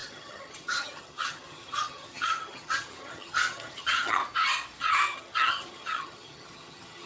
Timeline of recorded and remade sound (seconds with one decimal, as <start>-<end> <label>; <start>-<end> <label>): 0.0-4.2 remade; 4.2-4.8 recorded; 4.8-7.1 remade